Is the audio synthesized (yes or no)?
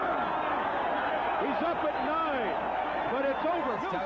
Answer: no